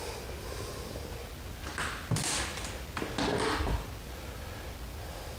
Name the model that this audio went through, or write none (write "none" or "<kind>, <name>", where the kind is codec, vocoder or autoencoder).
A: none